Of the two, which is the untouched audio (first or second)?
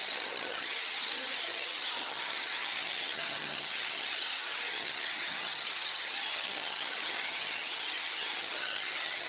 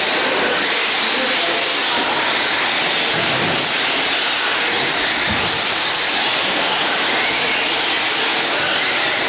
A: second